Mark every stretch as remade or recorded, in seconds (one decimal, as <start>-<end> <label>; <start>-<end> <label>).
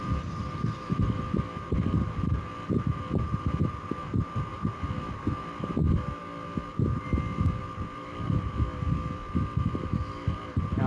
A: 0.0-4.5 remade; 4.5-5.6 recorded; 5.6-6.2 remade; 6.2-7.6 recorded; 7.6-10.9 remade